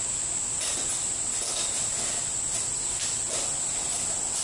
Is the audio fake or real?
real